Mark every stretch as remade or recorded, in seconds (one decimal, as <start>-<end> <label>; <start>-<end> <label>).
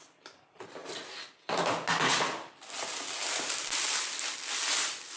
0.0-5.2 recorded